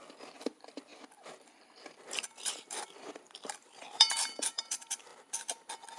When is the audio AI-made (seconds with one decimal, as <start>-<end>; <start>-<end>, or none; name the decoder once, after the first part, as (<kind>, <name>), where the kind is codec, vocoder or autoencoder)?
0.0-5.1 (vocoder, BigVGAN v2)